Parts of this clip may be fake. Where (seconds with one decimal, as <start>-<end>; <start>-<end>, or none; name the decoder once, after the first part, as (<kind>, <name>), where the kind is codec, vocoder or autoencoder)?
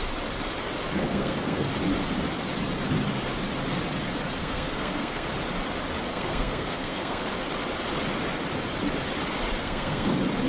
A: 1.0-1.7 (codec, SNAC); 4.4-5.3; 6.1-7.3; 9.6-10.1